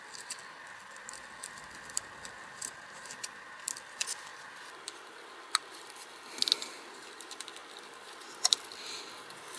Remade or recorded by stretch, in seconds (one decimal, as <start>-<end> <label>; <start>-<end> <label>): 0.0-7.6 recorded; 7.6-9.1 remade; 9.1-9.6 recorded

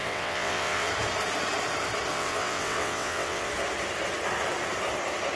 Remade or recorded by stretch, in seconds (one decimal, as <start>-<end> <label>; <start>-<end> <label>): 0.0-0.9 remade; 0.9-2.1 recorded; 2.1-3.5 remade; 3.5-5.4 recorded

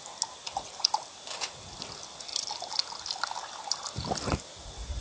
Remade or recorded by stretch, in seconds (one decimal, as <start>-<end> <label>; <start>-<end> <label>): 0.0-5.0 recorded

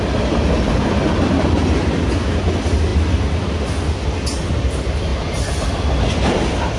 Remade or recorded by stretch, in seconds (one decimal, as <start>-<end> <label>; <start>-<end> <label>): 0.0-6.8 recorded

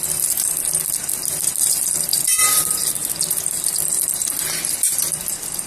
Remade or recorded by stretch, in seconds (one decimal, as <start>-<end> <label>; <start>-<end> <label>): 0.0-2.1 recorded; 2.1-2.8 remade; 2.8-5.7 recorded

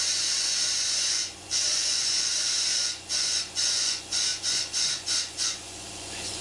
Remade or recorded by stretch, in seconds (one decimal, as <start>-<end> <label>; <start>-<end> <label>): 0.0-6.4 remade

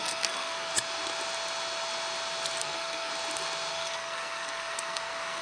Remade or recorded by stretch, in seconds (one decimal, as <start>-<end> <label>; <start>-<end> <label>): 0.0-0.7 remade; 0.7-2.6 recorded; 2.6-3.1 remade; 3.1-3.7 recorded; 3.7-5.4 remade

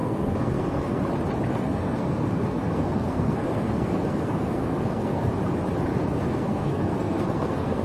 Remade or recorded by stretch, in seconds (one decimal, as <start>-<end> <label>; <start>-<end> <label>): 0.0-1.0 remade; 1.0-1.5 recorded; 1.5-5.3 remade; 5.3-5.9 recorded; 5.9-7.8 remade